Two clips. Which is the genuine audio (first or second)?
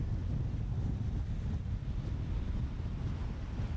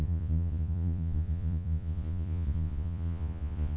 first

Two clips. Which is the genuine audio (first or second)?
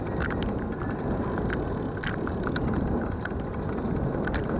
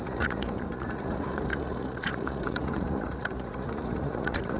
first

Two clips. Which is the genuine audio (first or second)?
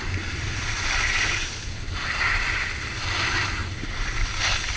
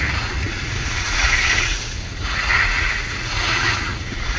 first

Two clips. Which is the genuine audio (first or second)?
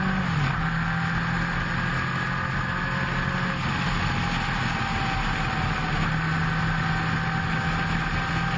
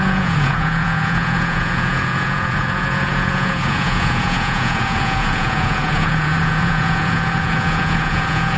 first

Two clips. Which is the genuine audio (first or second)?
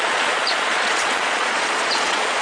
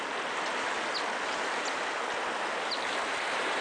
second